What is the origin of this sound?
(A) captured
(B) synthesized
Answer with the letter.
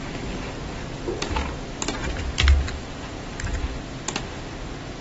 A